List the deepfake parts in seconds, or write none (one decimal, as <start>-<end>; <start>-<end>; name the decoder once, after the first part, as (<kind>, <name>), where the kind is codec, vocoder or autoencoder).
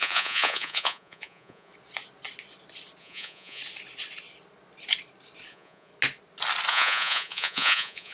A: 0.0-1.7 (vocoder, Vocos); 3.0-3.6; 5.5-5.9; 6.7-8.1